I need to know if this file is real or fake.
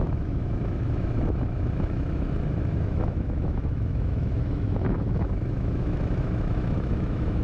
fake